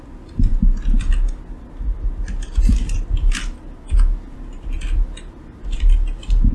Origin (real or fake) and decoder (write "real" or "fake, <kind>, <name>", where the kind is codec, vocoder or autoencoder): real